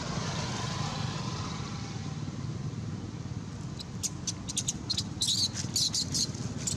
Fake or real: real